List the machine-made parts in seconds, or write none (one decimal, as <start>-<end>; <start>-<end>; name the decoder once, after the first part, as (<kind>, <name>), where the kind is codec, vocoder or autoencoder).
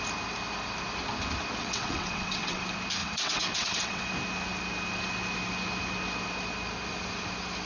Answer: 1.6-2.6 (vocoder, WaveNeXt); 3.0-4.1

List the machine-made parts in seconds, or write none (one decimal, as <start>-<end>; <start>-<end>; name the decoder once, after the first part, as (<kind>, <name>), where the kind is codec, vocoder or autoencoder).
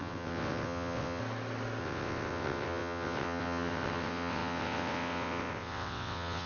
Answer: 0.0-1.2 (vocoder, WaveNeXt); 1.8-6.5